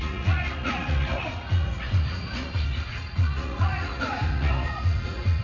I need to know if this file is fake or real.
fake